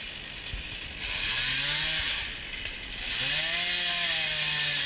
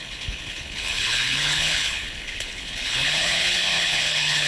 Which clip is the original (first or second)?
first